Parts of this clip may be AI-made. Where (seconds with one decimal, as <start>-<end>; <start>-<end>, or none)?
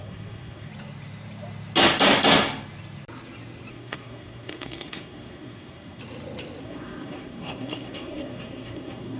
0.0-0.7; 3.7-6.0; 6.6-9.2